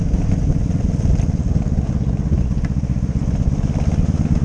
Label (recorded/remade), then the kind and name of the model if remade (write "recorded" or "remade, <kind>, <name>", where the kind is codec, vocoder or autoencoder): recorded